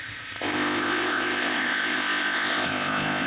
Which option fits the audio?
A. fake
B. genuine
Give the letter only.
A